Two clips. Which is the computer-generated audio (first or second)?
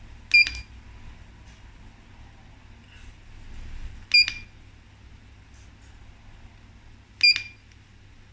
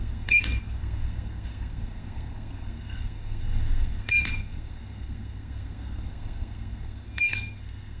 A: second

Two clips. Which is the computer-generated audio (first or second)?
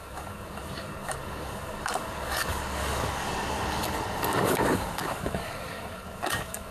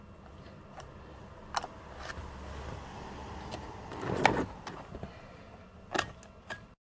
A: first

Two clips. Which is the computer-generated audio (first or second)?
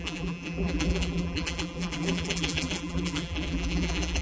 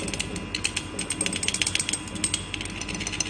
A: first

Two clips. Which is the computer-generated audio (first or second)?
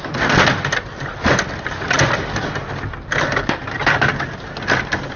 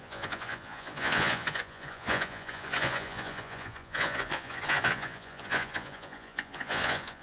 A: second